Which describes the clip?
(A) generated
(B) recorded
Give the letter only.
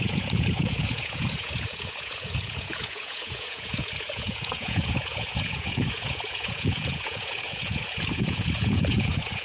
A